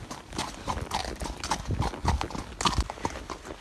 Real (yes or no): yes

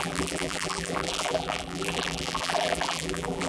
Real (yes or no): no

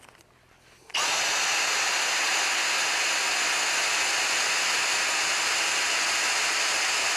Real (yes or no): yes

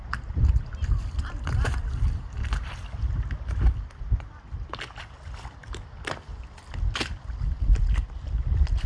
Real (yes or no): yes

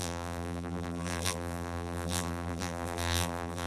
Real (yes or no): no